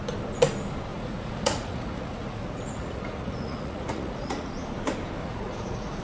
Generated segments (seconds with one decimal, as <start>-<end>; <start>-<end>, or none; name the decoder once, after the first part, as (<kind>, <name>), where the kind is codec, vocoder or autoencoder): 0.9-4.5 (vocoder, Vocos); 5.2-6.0